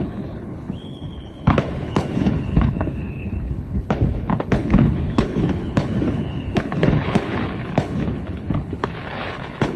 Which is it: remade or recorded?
remade